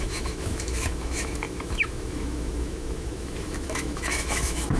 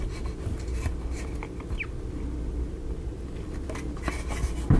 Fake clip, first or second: first